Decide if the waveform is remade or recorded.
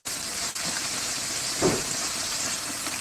remade